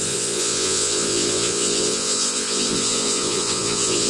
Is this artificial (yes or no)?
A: yes